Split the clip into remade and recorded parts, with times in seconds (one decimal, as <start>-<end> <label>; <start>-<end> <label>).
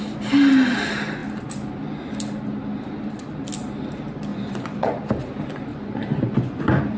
0.0-4.3 recorded; 4.3-5.0 remade; 5.0-5.7 recorded; 5.7-7.0 remade